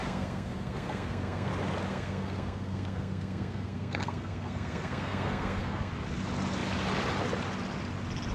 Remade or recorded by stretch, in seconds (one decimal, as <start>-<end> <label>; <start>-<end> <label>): 0.0-1.5 remade; 1.5-1.9 recorded; 1.9-5.9 remade; 5.9-8.3 recorded